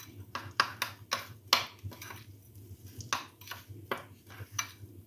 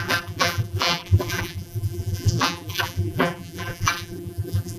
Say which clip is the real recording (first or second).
first